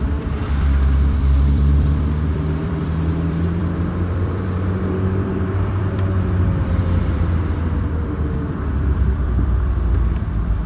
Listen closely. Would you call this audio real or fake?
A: fake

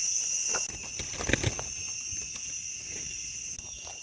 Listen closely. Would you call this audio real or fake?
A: real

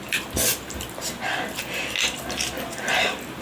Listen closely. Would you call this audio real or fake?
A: real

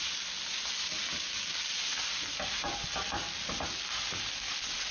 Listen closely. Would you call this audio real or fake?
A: real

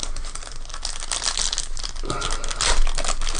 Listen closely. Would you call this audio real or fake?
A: real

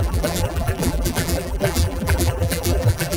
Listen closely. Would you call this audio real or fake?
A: fake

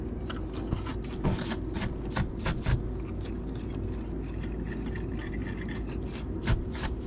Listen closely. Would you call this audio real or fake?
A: real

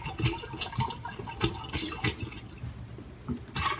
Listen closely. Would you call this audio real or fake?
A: real